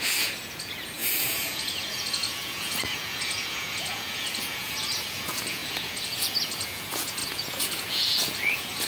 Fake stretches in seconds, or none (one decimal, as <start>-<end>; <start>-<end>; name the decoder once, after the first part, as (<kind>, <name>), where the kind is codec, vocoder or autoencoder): 0.0-8.9 (vocoder, Vocos)